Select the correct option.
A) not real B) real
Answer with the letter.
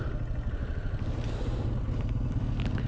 B